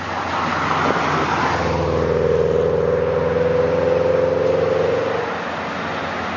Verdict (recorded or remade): recorded